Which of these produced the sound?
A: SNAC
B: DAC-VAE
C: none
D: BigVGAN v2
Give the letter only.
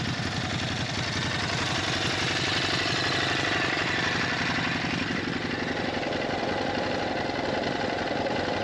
C